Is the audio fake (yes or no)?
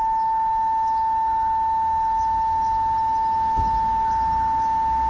no